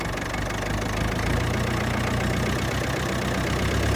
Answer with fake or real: real